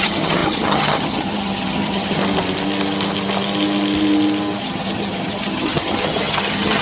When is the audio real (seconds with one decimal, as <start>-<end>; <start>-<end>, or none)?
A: 2.2-4.6